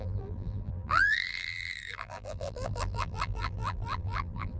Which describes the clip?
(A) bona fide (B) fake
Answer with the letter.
B